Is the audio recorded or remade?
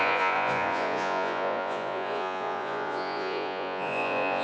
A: remade